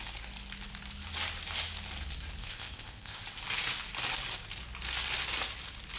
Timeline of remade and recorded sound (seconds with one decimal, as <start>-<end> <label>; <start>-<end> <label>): 0.0-2.4 recorded; 2.4-3.2 remade; 3.2-6.0 recorded